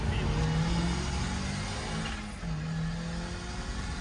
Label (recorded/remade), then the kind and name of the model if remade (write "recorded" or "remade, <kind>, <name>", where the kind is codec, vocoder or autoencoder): recorded